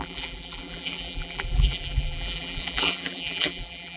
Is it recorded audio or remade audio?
remade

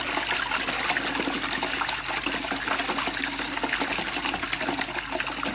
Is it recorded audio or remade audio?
recorded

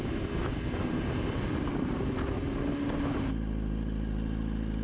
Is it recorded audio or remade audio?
recorded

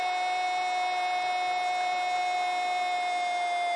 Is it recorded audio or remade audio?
recorded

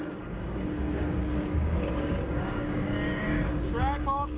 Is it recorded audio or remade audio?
remade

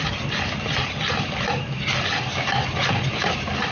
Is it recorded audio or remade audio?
recorded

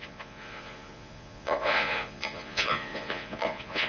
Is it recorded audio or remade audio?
remade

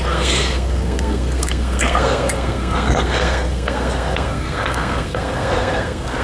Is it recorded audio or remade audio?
remade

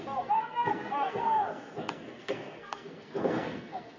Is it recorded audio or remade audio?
remade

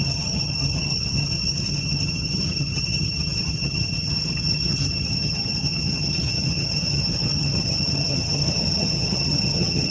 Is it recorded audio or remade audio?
remade